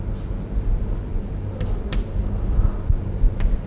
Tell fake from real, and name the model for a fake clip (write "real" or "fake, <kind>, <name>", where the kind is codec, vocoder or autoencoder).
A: real